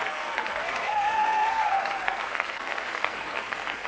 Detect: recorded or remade remade